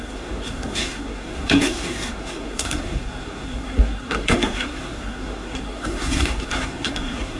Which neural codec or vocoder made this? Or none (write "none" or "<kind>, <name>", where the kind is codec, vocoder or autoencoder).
codec, SNAC